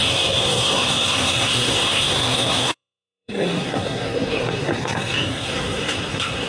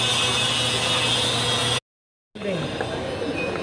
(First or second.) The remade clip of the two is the first